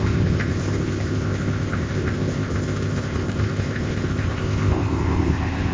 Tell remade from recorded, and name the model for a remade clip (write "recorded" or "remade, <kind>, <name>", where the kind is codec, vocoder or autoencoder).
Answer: remade, codec, ZipCodec